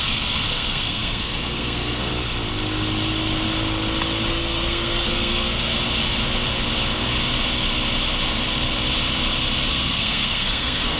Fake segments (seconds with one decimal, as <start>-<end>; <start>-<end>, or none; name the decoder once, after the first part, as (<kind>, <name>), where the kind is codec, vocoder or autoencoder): 0.0-2.1 (codec, SNAC); 4.3-5.7; 9.7-11.0

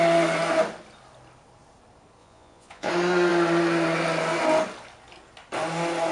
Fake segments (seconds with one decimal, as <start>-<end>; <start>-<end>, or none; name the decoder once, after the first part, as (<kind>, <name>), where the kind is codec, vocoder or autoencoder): 2.2-2.9 (vocoder, Vocos)

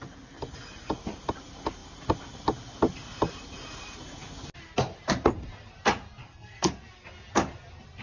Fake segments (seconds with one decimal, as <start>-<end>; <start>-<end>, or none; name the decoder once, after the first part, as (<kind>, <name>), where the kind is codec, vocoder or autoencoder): 6.2-6.7 (codec, SNAC)

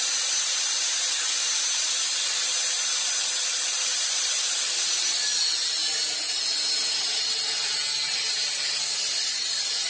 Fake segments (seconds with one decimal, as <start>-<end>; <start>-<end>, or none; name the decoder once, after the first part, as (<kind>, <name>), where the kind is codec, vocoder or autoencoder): none

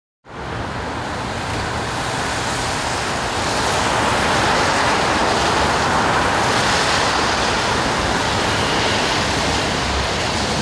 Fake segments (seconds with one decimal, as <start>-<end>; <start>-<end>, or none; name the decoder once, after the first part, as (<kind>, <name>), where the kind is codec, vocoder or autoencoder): none

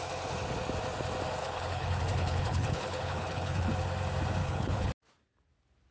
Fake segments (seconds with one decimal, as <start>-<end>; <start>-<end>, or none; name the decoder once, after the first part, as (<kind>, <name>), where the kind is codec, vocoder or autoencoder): 1.4-3.7 (codec, HILCodec); 4.4-4.9

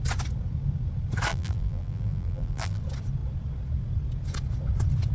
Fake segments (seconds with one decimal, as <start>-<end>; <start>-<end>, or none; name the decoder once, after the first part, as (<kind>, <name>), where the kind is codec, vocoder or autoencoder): 1.3-2.8 (vocoder, BigVGAN v2)

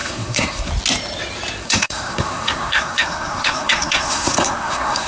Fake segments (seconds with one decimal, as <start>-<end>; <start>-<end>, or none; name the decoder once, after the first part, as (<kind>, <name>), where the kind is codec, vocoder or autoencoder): 0.0-0.7 (codec, SNAC); 1.6-5.1